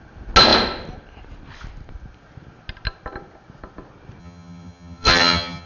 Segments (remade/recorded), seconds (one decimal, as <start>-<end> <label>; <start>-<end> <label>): 0.0-4.2 recorded; 4.2-5.7 remade